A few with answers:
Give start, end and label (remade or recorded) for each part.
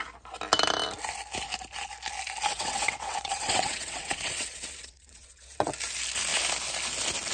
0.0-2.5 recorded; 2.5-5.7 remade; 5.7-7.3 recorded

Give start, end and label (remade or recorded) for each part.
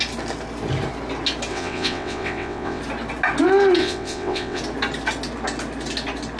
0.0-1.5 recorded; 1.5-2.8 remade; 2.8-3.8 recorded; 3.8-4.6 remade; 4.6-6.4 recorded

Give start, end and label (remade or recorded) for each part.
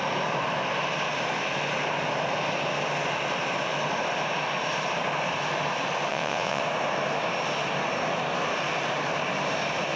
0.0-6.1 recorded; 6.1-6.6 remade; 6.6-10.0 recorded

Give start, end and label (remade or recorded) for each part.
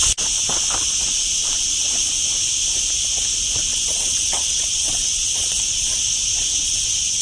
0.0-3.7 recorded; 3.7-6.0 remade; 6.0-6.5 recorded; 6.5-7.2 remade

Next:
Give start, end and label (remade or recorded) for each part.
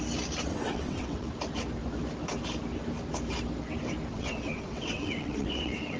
0.0-0.5 recorded; 0.5-1.3 remade; 1.3-4.1 recorded; 4.1-6.0 remade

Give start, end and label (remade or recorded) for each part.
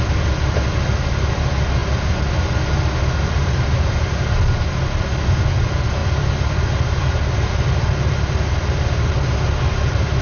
0.0-10.2 recorded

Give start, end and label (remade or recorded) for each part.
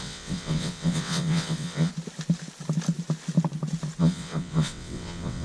0.0-1.9 remade; 1.9-4.0 recorded; 4.0-5.4 remade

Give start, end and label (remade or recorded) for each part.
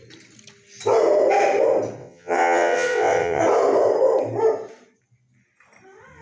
0.0-2.0 recorded; 2.0-3.4 remade; 3.4-6.2 recorded